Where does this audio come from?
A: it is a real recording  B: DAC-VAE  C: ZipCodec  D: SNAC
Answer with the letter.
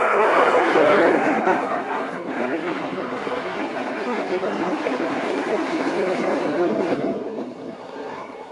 D